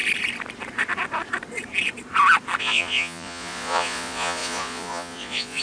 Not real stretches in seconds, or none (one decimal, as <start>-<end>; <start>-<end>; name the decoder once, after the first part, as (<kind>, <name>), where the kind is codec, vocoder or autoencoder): 2.6-5.6 (vocoder, Vocos)